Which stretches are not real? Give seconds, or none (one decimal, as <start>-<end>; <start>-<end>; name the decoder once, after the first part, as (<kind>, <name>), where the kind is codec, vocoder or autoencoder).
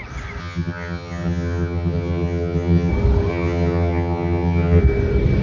0.4-2.9 (vocoder, HiFi-GAN); 3.3-4.8